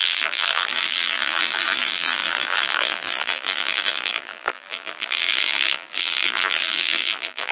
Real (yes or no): no